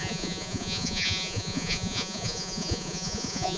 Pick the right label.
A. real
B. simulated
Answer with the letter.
B